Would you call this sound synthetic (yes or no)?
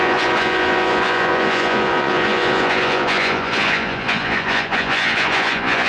yes